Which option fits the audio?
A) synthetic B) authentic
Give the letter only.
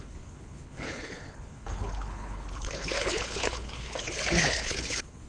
A